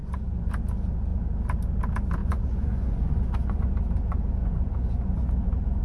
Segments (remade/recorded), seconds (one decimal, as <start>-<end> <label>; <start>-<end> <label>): 0.0-0.5 remade; 0.5-2.2 recorded; 2.2-3.7 remade; 3.7-4.4 recorded; 4.4-5.8 remade